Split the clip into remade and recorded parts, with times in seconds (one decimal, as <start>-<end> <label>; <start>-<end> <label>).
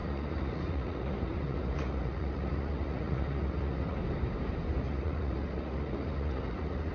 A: 0.0-4.0 remade; 4.0-4.8 recorded; 4.8-6.9 remade